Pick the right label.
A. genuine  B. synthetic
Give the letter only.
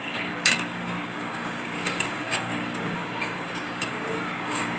B